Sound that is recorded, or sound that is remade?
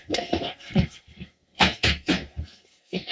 remade